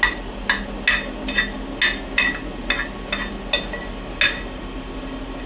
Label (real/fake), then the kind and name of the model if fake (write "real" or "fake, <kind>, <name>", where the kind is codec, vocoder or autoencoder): real